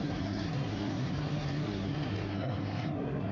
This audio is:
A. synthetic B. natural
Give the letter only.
A